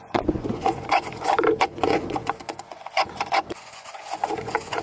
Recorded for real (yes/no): no